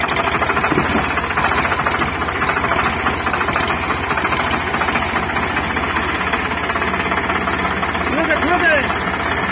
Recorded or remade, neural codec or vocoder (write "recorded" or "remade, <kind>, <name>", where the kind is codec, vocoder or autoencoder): recorded